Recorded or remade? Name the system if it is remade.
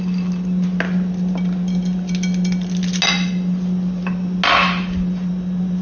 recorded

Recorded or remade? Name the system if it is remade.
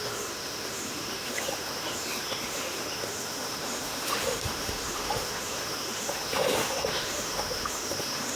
remade, autoencoder, DAC-VAE